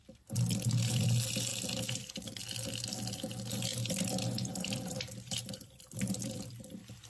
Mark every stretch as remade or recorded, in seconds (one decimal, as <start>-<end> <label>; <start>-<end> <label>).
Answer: 0.0-1.5 recorded; 1.5-2.2 remade; 2.2-3.7 recorded; 3.7-7.1 remade